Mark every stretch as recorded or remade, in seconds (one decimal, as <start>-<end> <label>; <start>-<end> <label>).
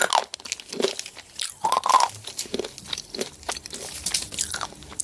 0.0-5.0 recorded